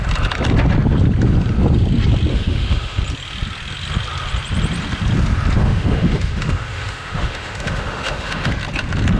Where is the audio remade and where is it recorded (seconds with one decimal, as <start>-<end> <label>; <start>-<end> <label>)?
0.0-2.3 recorded; 2.3-3.0 remade; 3.0-5.6 recorded; 5.6-8.5 remade; 8.5-9.2 recorded